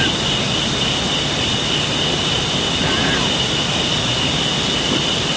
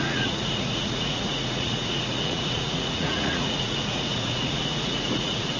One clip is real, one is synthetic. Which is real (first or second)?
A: first